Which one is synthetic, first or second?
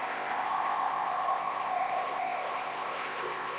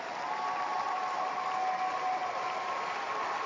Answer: first